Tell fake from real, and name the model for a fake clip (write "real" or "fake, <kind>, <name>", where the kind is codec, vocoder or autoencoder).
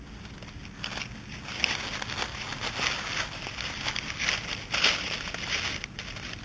real